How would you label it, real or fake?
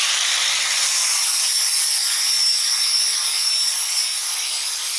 fake